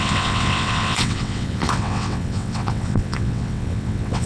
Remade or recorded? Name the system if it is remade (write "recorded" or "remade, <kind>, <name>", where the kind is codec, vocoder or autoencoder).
remade, vocoder, WaveNeXt